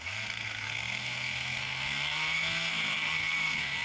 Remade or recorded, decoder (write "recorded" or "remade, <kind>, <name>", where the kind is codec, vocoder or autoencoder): remade, codec, SNAC